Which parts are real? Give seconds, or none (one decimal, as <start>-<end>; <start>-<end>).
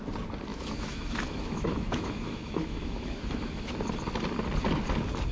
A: 0.0-0.5; 3.7-5.3